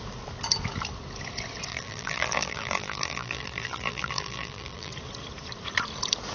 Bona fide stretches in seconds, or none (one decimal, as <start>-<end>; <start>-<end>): 0.0-1.7; 4.9-6.3